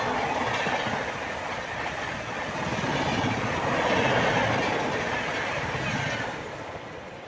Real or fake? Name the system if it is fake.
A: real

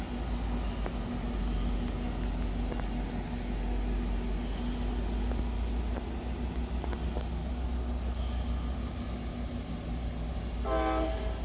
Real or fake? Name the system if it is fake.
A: real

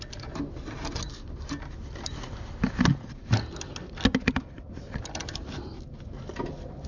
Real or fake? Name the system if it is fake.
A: real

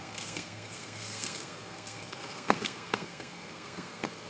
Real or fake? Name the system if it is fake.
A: fake, codec, SNAC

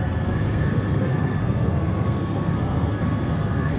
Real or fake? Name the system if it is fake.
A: fake, codec, SNAC